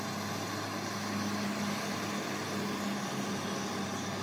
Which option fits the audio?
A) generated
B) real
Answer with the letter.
B